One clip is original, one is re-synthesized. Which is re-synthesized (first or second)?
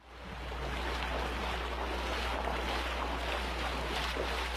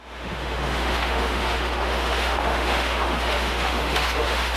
second